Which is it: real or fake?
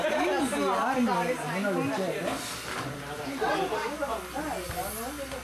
real